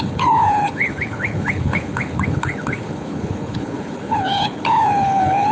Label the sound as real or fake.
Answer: fake